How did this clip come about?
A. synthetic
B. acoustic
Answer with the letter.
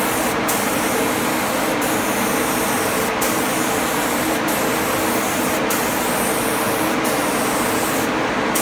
B